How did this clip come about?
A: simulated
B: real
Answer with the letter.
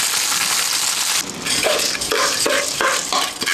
B